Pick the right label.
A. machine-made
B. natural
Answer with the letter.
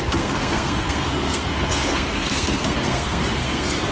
A